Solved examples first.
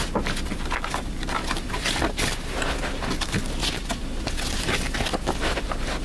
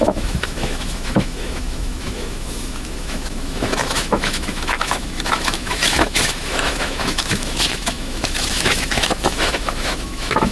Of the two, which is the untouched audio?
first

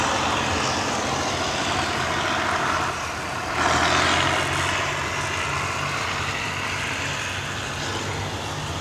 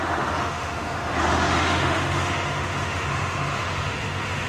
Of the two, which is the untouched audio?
first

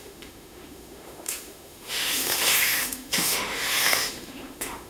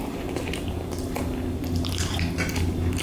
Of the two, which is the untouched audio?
second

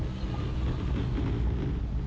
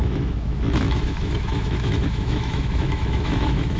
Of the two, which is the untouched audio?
first